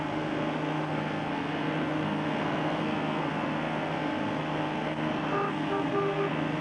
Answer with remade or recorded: remade